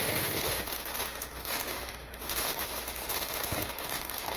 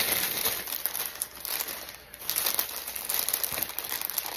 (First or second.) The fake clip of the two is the first